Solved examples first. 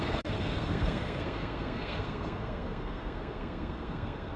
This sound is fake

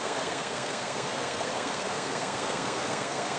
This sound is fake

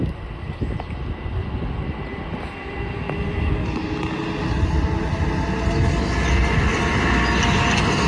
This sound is real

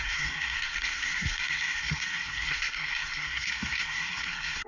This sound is fake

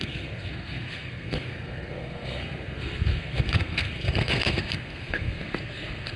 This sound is fake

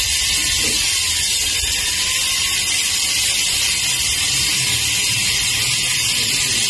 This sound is real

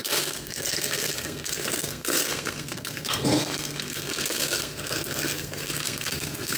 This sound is fake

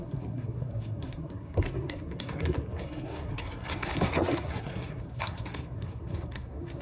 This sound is fake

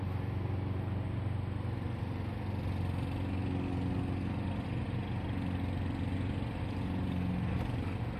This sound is real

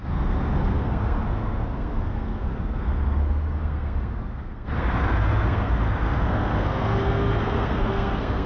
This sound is fake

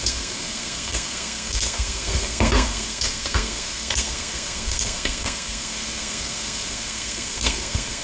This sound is fake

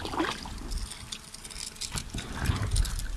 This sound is real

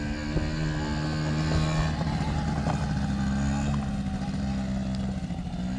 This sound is real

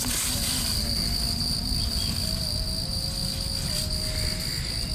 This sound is real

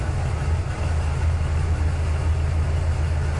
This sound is real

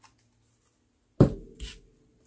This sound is real